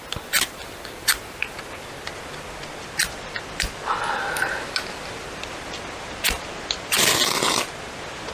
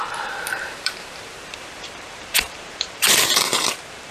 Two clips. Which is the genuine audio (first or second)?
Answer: first